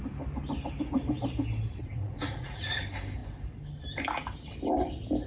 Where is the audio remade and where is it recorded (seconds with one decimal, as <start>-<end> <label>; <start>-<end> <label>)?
0.0-1.8 recorded; 1.8-2.8 remade; 2.8-5.3 recorded